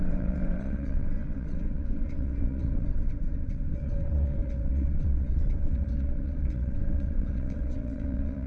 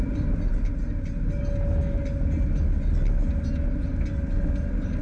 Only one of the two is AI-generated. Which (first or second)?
first